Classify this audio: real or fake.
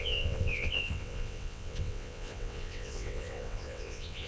fake